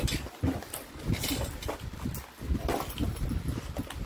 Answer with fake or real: real